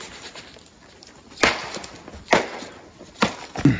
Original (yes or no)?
yes